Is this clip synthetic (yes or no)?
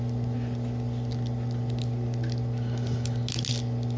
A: no